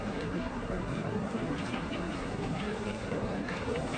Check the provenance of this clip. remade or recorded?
remade